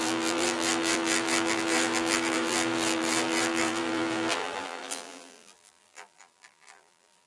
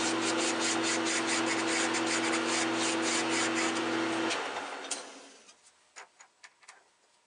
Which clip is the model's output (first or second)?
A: first